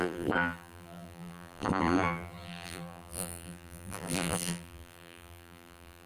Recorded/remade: remade